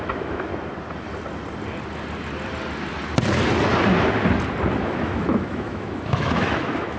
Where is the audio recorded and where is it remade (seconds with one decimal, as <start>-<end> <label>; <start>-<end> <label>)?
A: 0.0-0.5 remade; 0.5-4.7 recorded; 4.7-7.0 remade